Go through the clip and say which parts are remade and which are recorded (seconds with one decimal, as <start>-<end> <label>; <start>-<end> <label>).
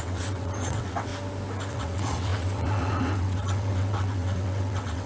0.0-1.1 remade; 1.1-1.7 recorded; 1.7-5.1 remade